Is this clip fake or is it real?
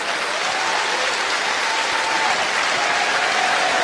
real